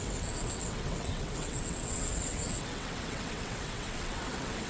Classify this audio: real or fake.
fake